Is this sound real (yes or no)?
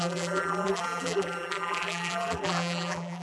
no